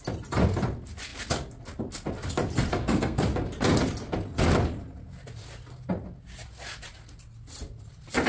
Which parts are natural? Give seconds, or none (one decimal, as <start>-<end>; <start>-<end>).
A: 0.0-2.7; 3.2-8.3